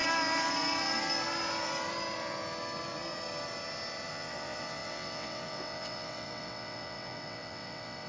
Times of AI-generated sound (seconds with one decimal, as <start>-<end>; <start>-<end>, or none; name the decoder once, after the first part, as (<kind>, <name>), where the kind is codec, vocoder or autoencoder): 4.1-8.1 (vocoder, WaveNeXt)

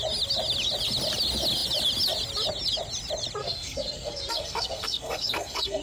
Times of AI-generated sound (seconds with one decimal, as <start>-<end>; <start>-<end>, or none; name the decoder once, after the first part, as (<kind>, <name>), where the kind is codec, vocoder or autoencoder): 3.4-5.8 (codec, SNAC)

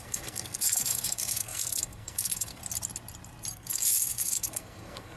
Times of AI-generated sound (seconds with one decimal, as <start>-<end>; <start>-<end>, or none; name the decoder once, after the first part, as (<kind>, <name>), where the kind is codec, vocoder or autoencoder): 0.0-2.6 (codec, SNAC); 3.5-5.2

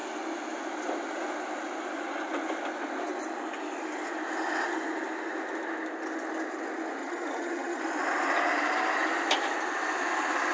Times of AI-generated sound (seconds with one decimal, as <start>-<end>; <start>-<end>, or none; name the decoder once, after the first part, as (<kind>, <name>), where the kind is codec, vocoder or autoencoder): 7.0-7.8 (vocoder, HiFi-GAN)

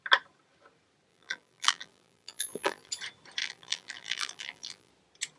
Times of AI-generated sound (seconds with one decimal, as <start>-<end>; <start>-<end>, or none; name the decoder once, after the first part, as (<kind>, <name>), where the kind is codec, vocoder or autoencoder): 1.1-2.9 (vocoder, BigVGAN v2); 3.4-4.9

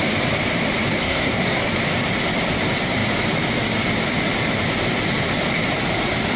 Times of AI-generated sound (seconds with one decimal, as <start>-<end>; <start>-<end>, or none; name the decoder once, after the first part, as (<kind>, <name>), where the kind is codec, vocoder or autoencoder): 1.0-1.6 (codec, SNAC)

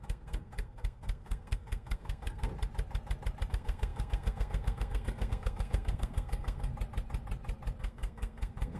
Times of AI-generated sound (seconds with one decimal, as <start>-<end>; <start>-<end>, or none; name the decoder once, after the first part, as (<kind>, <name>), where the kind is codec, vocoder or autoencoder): 0.0-2.5 (codec, SNAC); 3.5-6.7; 7.8-8.8